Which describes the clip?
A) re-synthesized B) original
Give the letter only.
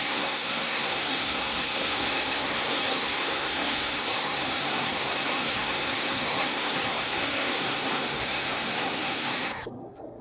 A